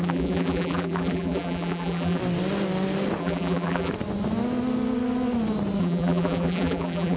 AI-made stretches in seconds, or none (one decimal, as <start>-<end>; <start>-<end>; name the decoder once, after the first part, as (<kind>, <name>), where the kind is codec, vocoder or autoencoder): 0.0-2.2 (vocoder, BigVGAN v2); 3.2-3.9; 5.8-7.2